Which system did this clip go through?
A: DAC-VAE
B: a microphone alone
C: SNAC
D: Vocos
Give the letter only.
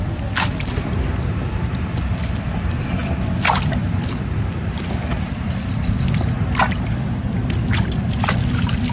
B